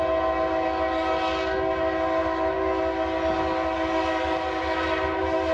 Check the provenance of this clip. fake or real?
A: real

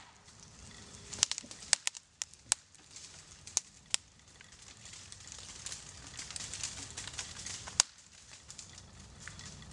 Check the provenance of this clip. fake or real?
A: real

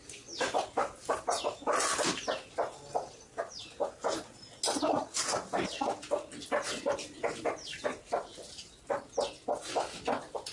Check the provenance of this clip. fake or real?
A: real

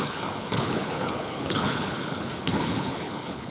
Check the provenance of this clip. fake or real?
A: fake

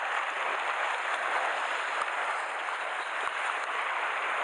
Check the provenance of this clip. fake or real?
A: real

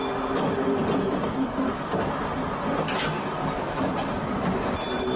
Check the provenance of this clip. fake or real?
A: real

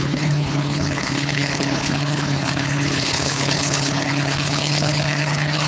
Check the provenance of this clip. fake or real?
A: fake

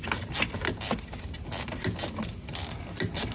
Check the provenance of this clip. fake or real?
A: real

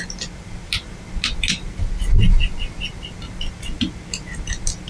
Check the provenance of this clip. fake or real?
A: real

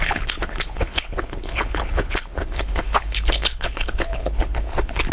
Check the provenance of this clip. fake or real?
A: fake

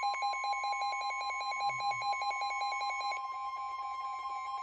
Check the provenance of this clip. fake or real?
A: real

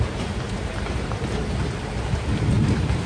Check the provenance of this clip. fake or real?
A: real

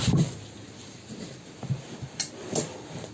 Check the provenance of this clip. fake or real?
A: real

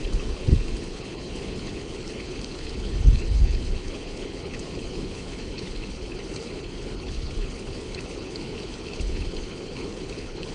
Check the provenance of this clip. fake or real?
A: fake